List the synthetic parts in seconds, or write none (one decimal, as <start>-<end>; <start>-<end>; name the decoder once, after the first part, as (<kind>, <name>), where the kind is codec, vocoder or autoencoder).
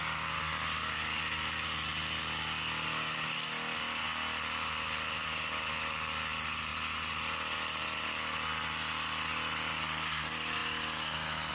none